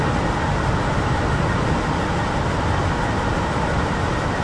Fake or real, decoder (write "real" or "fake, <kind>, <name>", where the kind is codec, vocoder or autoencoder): real